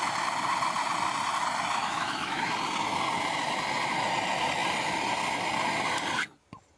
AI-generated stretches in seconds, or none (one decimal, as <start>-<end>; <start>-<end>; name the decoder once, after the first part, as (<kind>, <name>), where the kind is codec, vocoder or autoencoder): 1.8-2.5 (autoencoder, DAC-VAE)